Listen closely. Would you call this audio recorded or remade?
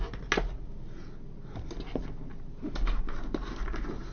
recorded